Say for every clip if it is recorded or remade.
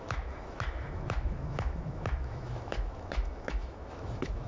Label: remade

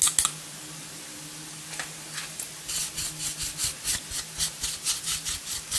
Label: recorded